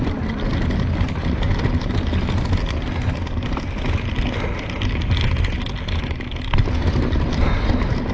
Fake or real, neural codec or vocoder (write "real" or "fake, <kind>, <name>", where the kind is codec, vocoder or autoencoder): real